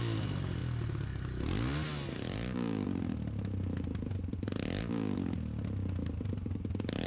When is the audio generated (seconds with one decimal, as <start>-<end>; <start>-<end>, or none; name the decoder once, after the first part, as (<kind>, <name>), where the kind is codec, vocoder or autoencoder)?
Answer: none